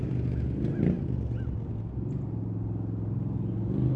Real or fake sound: real